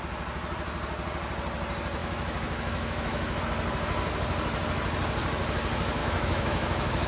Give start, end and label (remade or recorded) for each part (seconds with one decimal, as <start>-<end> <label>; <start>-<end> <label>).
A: 0.0-2.0 recorded; 2.0-3.4 remade; 3.4-6.0 recorded; 6.0-7.1 remade